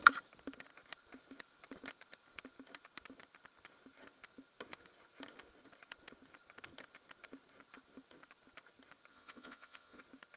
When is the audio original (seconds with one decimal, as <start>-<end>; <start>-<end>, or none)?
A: 0.0-9.1; 10.0-10.4